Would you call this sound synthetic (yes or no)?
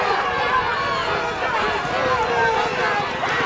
no